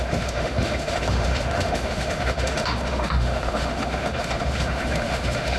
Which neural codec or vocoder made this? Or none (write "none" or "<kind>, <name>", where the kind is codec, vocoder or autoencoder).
autoencoder, DAC-VAE